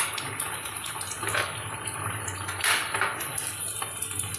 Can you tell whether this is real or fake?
real